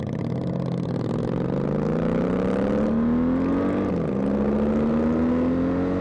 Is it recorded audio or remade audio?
recorded